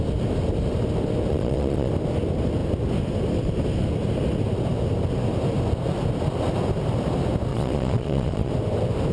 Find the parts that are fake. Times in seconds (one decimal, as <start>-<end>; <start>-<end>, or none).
1.3-1.9; 7.5-8.5